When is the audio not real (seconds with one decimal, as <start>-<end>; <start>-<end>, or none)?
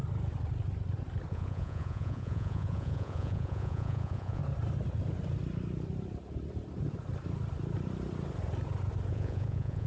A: 1.3-4.4; 9.1-9.9